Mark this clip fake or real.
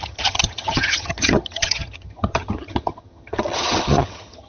fake